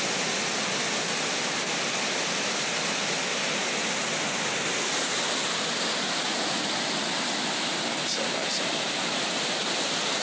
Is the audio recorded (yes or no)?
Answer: yes